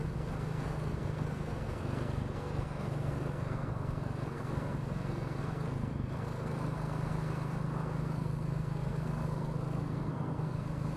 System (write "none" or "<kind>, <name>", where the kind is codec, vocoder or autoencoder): codec, SNAC